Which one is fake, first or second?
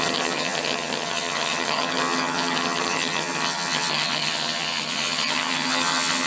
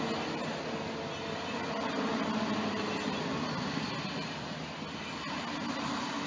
first